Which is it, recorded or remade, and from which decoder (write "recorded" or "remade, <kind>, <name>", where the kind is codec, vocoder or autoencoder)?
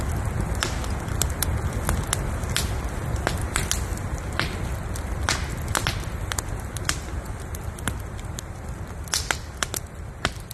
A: recorded